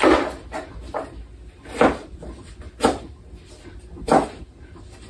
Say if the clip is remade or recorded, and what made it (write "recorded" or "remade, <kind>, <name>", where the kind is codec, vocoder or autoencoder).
recorded